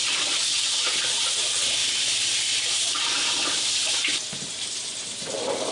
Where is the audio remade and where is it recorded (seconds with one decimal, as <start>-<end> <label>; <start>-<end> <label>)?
0.0-1.8 recorded; 1.8-5.2 remade; 5.2-5.7 recorded